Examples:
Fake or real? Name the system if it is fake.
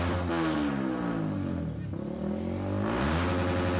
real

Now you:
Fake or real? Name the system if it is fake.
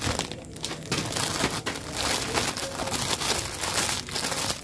real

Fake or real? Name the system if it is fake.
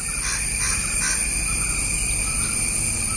real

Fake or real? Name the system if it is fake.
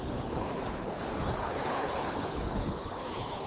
fake, codec, HILCodec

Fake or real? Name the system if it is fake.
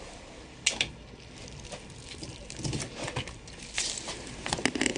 real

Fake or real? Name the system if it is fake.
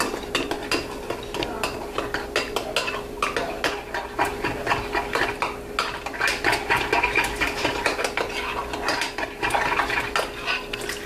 real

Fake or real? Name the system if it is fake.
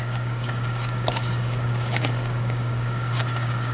fake, codec, DAC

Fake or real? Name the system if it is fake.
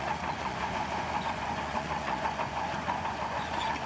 fake, vocoder, Vocos